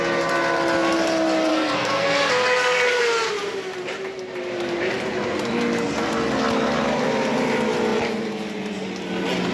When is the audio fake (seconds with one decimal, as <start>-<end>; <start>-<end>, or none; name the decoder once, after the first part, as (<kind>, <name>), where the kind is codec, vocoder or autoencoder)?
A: 1.5-3.0 (codec, SNAC)

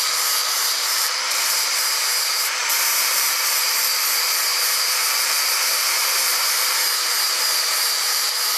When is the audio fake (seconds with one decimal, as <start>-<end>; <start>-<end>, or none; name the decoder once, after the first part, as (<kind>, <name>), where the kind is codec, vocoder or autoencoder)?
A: 0.0-8.6 (vocoder, BigVGAN v2)

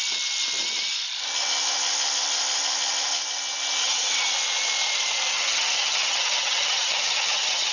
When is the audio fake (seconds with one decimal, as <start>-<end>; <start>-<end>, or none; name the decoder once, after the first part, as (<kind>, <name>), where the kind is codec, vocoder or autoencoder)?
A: 3.8-4.3 (vocoder, HiFi-GAN); 5.3-7.7

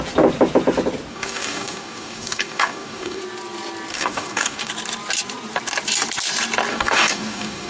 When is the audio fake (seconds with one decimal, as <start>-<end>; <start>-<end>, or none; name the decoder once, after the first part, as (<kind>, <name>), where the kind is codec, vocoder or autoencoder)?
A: 1.1-3.2 (codec, DAC); 3.9-4.7; 6.7-7.7

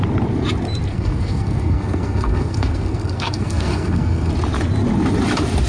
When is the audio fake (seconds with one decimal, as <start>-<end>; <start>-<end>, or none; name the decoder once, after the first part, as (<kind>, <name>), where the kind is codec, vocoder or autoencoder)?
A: 0.9-4.3 (codec, SNAC)

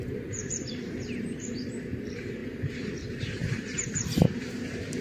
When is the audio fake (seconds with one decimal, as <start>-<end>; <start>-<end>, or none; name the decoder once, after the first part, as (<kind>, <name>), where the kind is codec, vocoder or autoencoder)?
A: 0.0-5.0 (vocoder, BigVGAN v2)